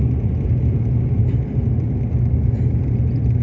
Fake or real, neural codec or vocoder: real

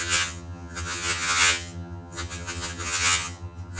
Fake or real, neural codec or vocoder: fake, vocoder, HiFi-GAN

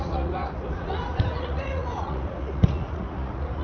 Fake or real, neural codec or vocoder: fake, vocoder, Vocos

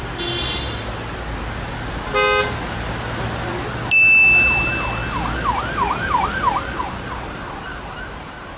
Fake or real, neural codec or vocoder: real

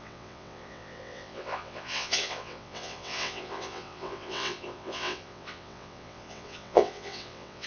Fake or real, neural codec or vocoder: fake, vocoder, WaveNeXt